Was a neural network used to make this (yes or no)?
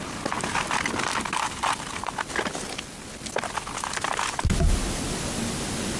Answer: no